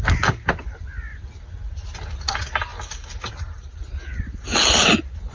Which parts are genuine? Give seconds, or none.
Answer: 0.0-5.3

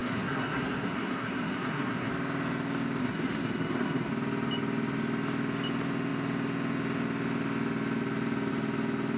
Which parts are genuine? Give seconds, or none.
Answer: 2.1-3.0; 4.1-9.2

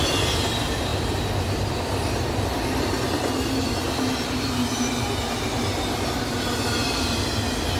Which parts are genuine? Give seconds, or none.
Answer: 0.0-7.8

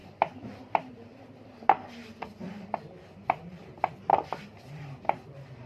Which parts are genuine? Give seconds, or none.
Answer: 0.0-2.8; 4.1-4.7

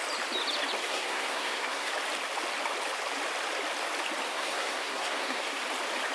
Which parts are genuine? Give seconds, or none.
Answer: 0.0-0.8; 1.9-4.3; 5.6-6.1